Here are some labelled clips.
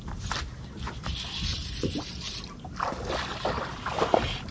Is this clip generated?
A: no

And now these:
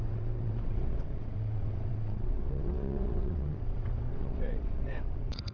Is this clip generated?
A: yes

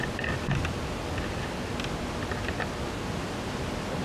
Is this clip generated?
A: no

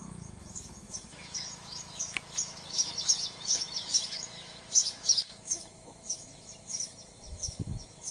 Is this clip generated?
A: yes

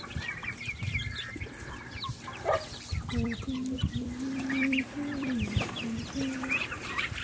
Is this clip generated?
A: yes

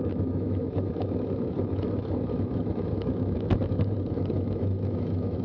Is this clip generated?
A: yes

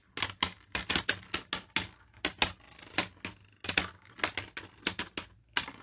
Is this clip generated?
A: no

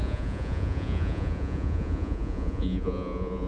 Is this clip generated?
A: yes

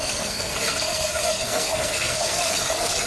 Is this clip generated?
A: yes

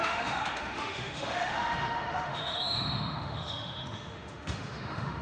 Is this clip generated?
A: yes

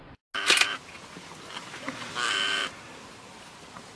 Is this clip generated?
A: no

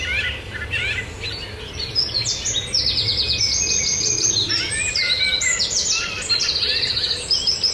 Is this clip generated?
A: no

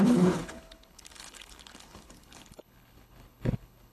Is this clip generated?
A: yes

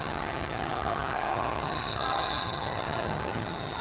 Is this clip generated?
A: yes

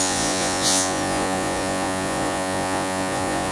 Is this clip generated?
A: yes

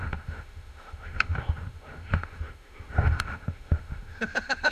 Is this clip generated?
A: yes